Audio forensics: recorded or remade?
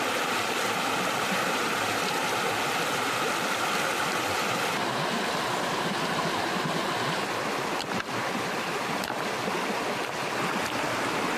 recorded